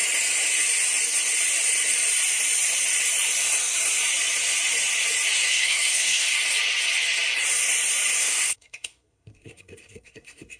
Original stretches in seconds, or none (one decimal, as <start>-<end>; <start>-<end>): 0.0-5.5; 6.4-8.2